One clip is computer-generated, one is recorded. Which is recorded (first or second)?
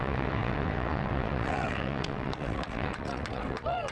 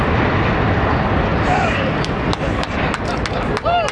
second